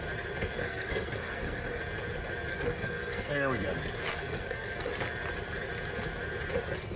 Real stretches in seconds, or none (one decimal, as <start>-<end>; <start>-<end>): 0.0-0.6; 1.8-2.5; 3.3-4.1; 4.9-7.0